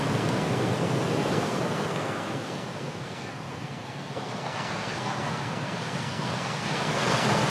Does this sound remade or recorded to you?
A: remade